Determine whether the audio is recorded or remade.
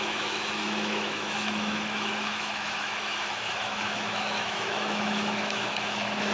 remade